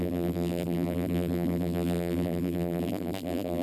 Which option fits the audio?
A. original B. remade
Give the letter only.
B